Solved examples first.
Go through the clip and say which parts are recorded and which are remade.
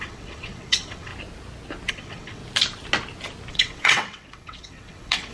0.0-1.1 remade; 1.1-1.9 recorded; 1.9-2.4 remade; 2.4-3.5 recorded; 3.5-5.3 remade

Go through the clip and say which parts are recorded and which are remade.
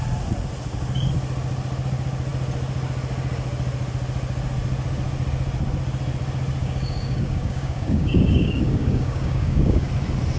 0.0-6.6 recorded; 6.6-9.9 remade; 9.9-10.4 recorded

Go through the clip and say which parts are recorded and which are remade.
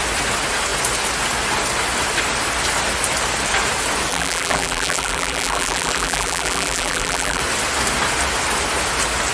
0.0-4.1 recorded; 4.1-7.4 remade; 7.4-9.3 recorded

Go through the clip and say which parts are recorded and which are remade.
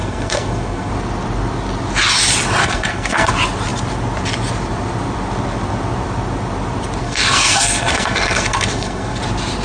0.0-0.9 remade; 0.9-2.6 recorded; 2.6-3.3 remade; 3.3-7.0 recorded; 7.0-9.2 remade; 9.2-9.6 recorded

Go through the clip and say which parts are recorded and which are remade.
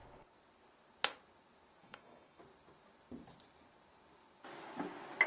0.0-1.8 recorded; 1.8-2.4 remade; 2.4-5.3 recorded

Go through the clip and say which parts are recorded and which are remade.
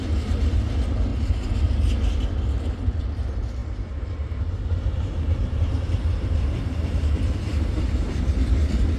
0.0-3.6 recorded; 3.6-8.2 remade; 8.2-9.0 recorded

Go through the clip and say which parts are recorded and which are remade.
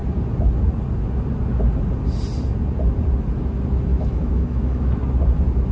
0.0-3.9 recorded; 3.9-4.9 remade; 4.9-5.7 recorded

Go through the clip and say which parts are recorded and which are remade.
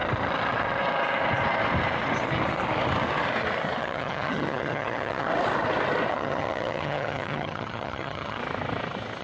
0.0-3.8 recorded; 3.8-5.3 remade; 5.3-6.1 recorded; 6.1-8.4 remade; 8.4-9.2 recorded